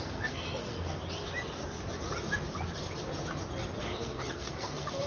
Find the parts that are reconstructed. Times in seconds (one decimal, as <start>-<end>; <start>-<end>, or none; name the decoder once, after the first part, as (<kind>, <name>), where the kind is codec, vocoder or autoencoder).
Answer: 0.0-1.0 (codec, SNAC); 3.8-5.1